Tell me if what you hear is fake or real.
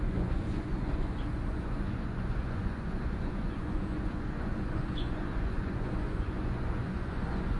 fake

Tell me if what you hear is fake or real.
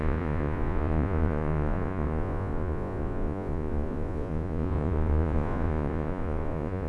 fake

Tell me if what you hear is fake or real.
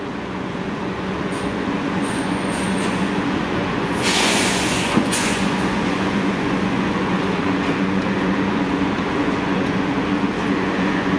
fake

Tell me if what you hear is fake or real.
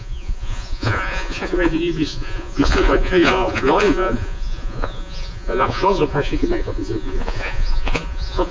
fake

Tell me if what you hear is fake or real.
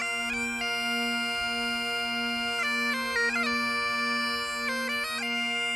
real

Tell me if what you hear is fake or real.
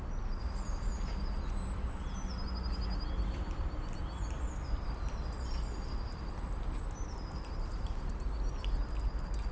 real